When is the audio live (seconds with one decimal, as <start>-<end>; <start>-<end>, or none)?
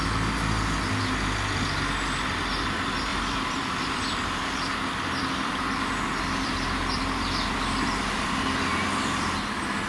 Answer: 0.0-3.1; 8.3-9.9